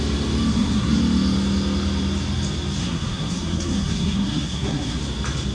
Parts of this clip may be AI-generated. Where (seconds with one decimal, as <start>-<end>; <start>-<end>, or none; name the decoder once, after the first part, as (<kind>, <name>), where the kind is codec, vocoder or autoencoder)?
0.5-1.0 (codec, SNAC); 2.8-5.0